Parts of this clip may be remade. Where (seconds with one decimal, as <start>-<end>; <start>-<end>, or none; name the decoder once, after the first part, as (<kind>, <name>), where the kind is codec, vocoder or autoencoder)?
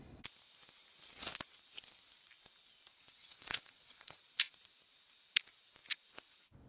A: 2.9-4.2 (vocoder, WaveNeXt)